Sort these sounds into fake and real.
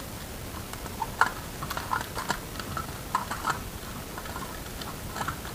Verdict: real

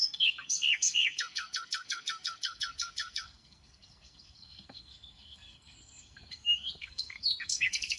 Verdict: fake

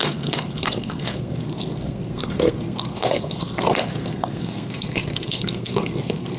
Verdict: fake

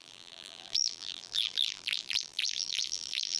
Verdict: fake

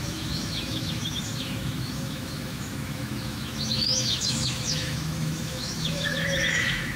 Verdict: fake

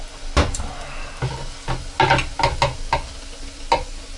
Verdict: real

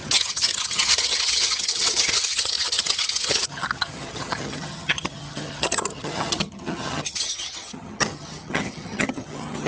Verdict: fake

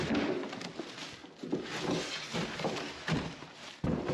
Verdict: real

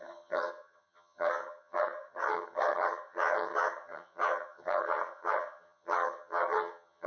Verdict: fake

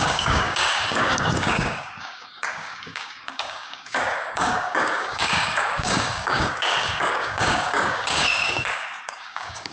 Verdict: fake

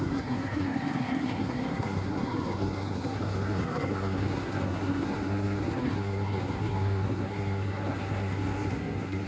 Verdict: fake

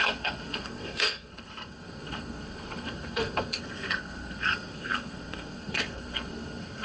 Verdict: fake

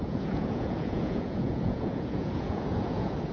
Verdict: fake